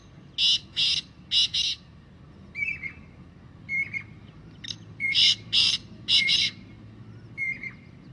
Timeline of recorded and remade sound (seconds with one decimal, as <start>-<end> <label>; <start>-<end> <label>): 0.0-4.2 recorded; 4.2-6.7 remade; 6.7-8.1 recorded